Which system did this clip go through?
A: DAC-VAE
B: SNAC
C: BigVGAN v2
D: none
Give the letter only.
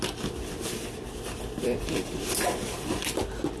D